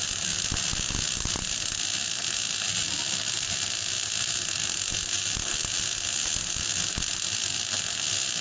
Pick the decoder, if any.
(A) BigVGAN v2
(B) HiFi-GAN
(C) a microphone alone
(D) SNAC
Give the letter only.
C